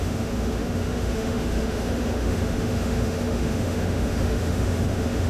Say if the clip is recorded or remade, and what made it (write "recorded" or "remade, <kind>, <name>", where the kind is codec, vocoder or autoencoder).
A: remade, autoencoder, DAC-VAE